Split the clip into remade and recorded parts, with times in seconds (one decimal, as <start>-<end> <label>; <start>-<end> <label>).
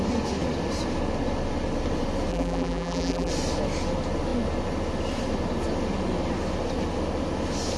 0.0-2.3 recorded; 2.3-3.3 remade; 3.3-7.8 recorded